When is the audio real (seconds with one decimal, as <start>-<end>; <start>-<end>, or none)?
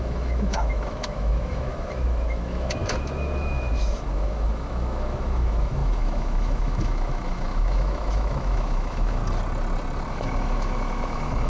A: 9.2-10.1